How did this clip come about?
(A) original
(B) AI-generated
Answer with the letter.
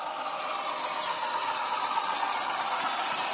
A